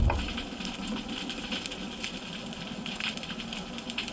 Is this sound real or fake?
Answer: real